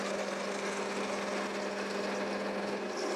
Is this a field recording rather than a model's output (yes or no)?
yes